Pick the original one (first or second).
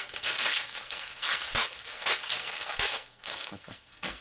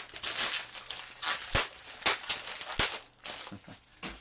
second